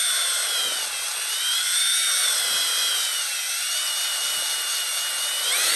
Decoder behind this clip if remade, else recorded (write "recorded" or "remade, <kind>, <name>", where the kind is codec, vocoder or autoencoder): recorded